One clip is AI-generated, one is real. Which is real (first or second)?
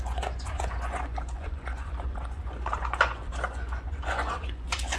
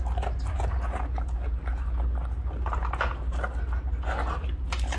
second